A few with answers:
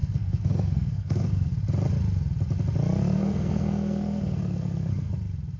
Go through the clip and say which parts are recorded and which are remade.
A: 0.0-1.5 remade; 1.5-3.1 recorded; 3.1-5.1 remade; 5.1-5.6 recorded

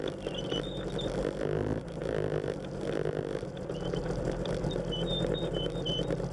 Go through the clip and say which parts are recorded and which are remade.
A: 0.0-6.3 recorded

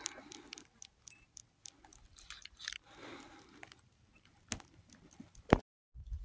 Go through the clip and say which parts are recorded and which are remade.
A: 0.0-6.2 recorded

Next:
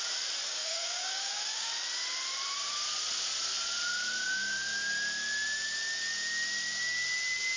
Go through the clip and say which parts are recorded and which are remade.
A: 0.0-0.5 recorded; 0.5-1.7 remade; 1.7-7.6 recorded